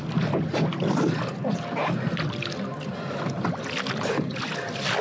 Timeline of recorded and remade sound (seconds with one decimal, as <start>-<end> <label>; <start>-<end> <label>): 0.0-5.0 recorded